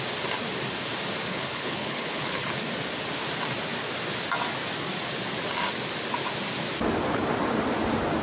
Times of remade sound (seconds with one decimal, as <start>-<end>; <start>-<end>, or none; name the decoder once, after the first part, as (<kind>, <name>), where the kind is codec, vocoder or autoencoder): 1.3-2.5 (codec, HILCodec)